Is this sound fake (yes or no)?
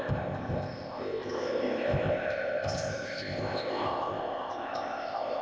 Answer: yes